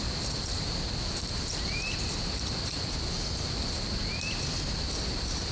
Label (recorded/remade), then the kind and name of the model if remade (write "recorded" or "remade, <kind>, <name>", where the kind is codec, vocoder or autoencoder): remade, vocoder, BigVGAN v2